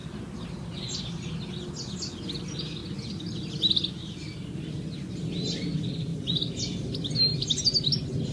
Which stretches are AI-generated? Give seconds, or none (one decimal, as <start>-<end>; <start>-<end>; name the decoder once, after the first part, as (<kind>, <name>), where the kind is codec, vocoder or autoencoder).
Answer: none